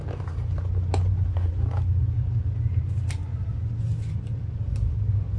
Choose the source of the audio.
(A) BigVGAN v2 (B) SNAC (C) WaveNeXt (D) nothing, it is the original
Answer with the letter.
D